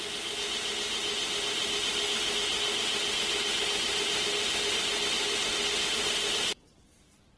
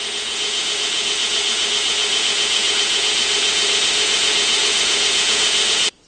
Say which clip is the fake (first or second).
second